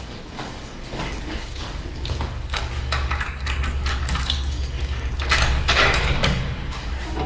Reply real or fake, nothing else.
fake